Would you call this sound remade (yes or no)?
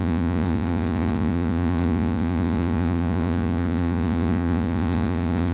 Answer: yes